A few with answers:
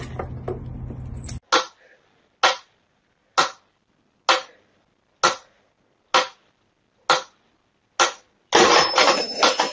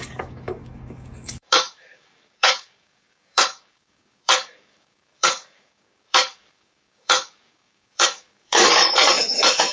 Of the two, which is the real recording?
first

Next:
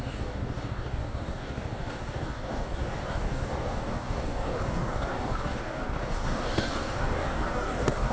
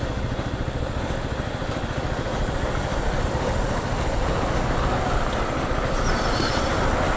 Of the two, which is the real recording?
second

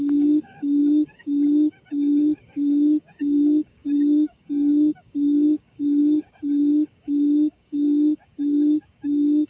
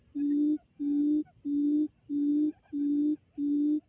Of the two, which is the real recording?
second